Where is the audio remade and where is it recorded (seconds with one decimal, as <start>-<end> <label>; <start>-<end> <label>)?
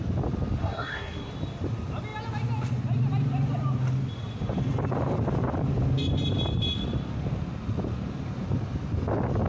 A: 0.0-0.6 recorded; 0.6-1.3 remade; 1.3-9.5 recorded